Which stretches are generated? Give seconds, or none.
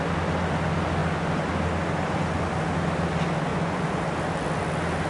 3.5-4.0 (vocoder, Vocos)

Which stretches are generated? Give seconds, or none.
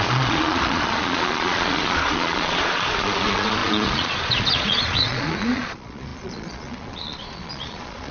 0.0-8.1 (vocoder, Vocos)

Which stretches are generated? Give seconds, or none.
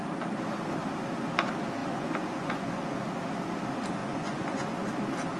1.8-2.9 (vocoder, Vocos); 4.0-4.7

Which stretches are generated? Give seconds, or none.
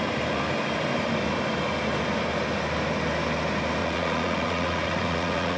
3.8-5.6 (vocoder, Vocos)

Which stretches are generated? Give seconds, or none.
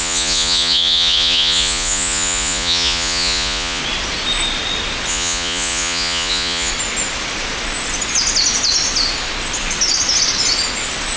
0.0-3.8 (vocoder, Vocos); 5.1-6.7